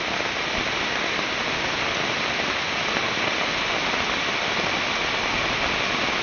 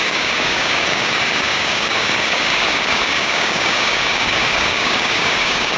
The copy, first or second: second